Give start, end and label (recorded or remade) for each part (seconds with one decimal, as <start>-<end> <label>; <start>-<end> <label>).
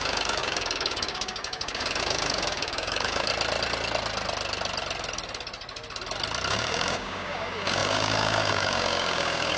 0.0-3.3 remade; 3.3-6.5 recorded; 6.5-9.6 remade